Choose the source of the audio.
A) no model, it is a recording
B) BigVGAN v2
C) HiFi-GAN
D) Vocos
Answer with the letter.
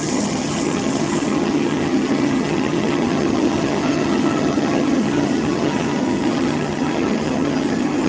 C